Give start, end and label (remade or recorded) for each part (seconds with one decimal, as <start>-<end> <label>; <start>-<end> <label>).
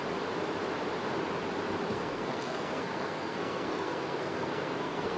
0.0-1.9 recorded; 1.9-5.2 remade